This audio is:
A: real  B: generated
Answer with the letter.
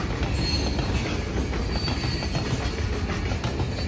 A